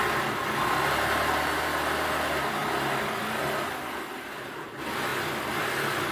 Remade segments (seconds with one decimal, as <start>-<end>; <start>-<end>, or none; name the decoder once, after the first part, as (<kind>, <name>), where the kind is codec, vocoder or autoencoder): none